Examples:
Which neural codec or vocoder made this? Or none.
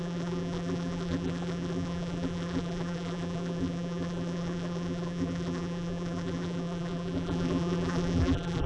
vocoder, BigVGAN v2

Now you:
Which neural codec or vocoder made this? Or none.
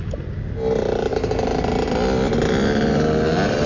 none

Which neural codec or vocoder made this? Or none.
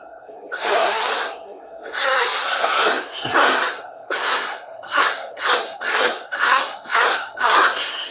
codec, SNAC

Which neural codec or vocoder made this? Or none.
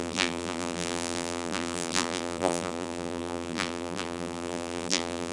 vocoder, BigVGAN v2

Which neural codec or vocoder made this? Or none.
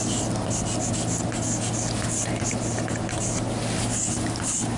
none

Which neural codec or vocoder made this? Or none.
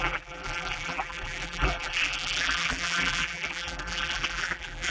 vocoder, BigVGAN v2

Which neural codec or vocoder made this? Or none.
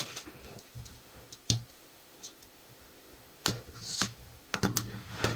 autoencoder, DAC-VAE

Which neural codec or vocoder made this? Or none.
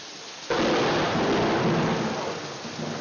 none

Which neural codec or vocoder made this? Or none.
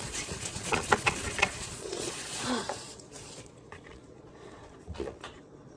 vocoder, Vocos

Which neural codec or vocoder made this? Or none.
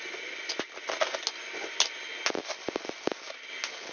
none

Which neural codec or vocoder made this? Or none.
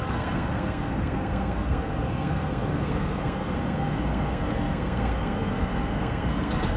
codec, SNAC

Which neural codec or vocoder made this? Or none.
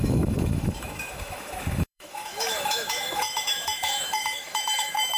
autoencoder, DAC-VAE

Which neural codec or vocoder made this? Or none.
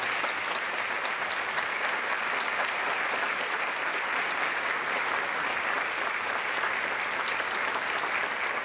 none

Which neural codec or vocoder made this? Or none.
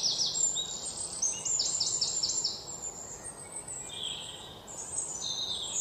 none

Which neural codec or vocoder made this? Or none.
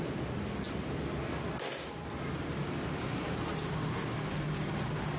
none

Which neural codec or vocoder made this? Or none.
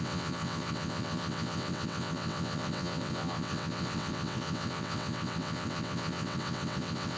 vocoder, WaveNeXt